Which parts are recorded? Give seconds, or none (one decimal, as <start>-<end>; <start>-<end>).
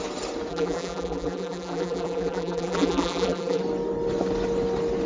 0.0-0.5; 3.6-5.1